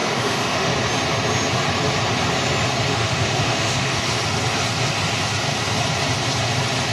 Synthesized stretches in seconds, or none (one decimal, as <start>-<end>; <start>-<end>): 0.0-0.7; 2.9-4.0